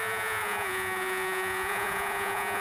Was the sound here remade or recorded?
remade